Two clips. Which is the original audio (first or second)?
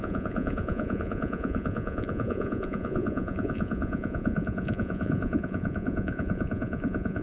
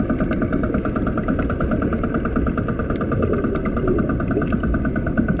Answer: second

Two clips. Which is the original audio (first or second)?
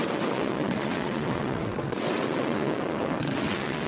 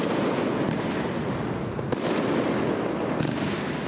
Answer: second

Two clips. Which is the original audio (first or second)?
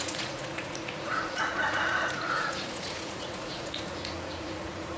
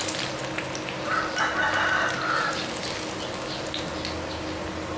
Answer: second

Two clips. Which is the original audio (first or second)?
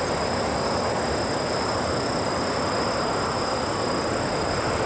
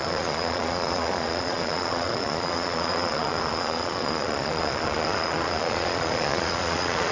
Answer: first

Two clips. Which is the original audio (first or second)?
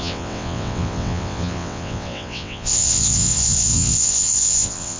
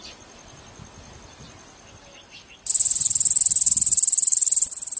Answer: second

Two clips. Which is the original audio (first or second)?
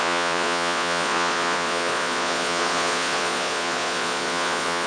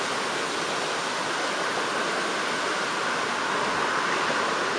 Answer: second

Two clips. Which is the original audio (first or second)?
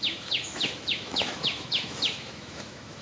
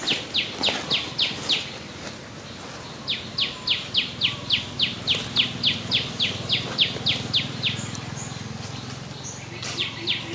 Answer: second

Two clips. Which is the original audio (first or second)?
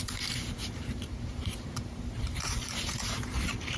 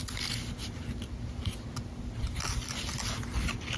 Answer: second